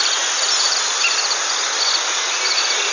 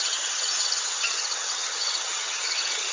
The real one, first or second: first